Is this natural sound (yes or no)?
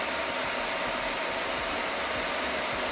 yes